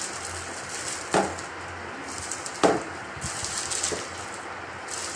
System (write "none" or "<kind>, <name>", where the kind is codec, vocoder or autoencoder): none